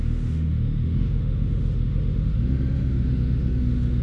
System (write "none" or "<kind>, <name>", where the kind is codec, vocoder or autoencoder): autoencoder, DAC-VAE